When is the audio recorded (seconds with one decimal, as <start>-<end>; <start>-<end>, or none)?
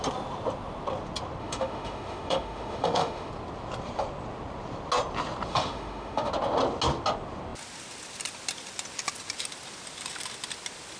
0.0-1.4; 3.3-5.5; 6.3-11.0